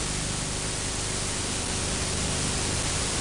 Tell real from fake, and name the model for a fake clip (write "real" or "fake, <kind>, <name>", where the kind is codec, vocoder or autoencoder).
real